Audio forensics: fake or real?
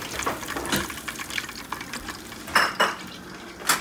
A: real